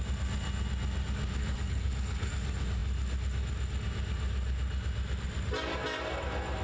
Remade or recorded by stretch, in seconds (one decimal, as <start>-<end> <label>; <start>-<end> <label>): 0.0-1.4 recorded; 1.4-2.3 remade; 2.3-6.6 recorded